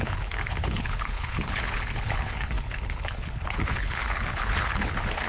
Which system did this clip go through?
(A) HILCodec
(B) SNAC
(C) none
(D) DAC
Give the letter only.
A